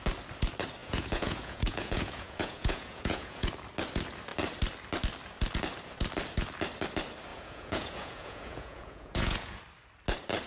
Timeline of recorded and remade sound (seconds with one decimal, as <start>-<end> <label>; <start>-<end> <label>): 0.0-0.8 recorded; 0.8-3.5 remade; 3.5-7.3 recorded; 7.3-9.6 remade; 9.6-10.5 recorded